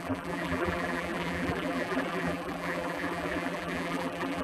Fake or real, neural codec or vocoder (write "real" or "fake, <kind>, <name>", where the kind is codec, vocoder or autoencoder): fake, vocoder, BigVGAN v2